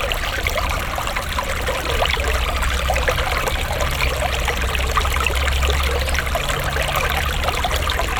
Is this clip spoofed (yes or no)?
no